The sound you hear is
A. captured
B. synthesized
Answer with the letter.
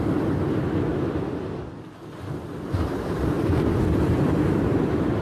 A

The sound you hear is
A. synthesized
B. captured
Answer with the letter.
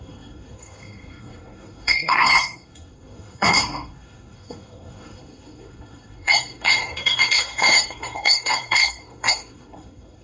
A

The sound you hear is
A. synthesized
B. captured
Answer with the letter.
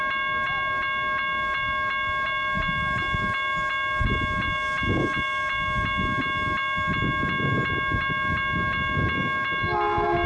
B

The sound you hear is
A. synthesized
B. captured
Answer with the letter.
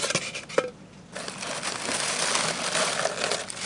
B